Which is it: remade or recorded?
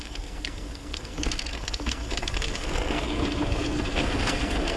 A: remade